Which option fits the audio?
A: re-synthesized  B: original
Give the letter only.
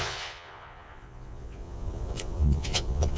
A